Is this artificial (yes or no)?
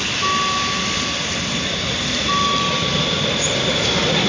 no